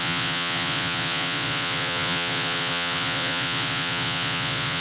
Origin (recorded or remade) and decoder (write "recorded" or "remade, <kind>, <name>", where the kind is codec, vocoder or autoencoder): remade, vocoder, Vocos